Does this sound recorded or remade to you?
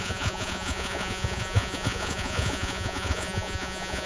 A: remade